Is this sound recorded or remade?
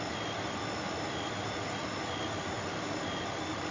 recorded